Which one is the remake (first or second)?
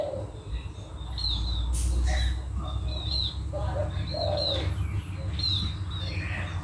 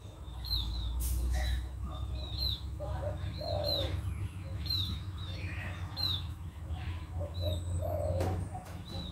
second